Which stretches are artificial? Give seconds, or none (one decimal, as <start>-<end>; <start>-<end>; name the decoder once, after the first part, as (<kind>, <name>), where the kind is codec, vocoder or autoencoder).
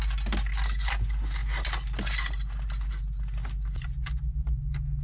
none